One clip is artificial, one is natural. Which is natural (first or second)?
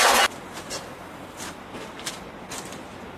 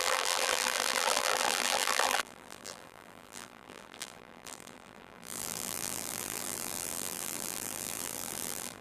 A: first